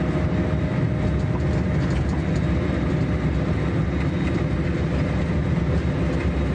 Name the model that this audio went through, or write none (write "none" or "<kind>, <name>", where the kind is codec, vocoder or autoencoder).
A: none